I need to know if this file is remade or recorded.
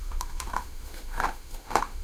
remade